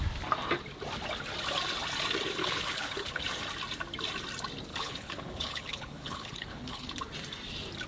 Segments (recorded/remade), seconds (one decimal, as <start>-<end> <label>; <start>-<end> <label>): 0.0-2.4 recorded; 2.4-3.2 remade; 3.2-4.7 recorded; 4.7-6.9 remade; 6.9-7.9 recorded